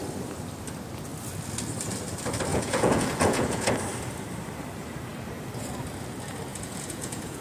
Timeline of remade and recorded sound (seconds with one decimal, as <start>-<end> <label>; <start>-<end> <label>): 0.0-2.5 recorded; 2.5-3.7 remade; 3.7-6.5 recorded; 6.5-7.4 remade